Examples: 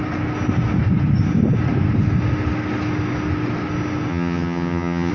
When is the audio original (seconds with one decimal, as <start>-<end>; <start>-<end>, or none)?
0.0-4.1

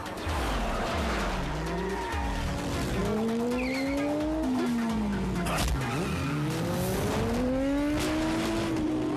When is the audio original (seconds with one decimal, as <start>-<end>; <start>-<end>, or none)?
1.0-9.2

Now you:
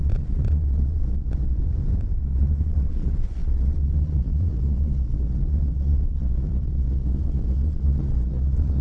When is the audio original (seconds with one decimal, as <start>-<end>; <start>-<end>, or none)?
1.6-2.2

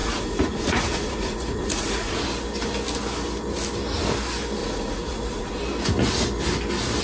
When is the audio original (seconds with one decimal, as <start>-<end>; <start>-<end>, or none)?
2.2-4.6; 5.6-7.0

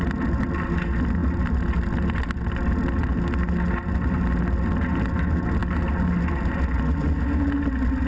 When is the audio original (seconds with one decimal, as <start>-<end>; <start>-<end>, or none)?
0.0-8.1